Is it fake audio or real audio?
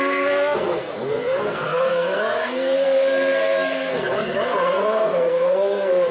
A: fake